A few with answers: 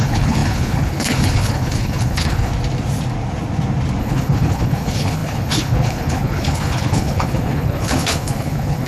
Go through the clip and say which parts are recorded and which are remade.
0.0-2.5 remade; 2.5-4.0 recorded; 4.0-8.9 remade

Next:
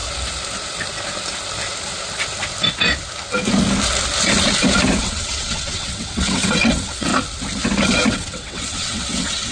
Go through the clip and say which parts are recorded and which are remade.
0.0-5.0 recorded; 5.0-7.1 remade; 7.1-8.1 recorded; 8.1-9.5 remade